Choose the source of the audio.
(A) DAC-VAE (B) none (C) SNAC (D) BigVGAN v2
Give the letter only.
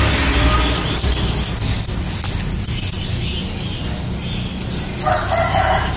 B